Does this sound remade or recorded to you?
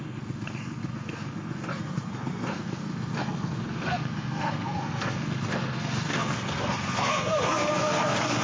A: remade